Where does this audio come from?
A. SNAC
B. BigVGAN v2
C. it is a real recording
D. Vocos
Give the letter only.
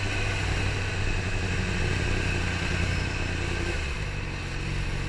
C